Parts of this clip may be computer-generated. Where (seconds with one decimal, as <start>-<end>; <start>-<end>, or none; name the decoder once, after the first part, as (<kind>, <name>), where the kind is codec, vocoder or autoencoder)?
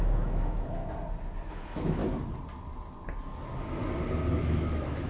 0.0-0.8 (autoencoder, DAC-VAE); 1.5-2.0; 4.4-5.1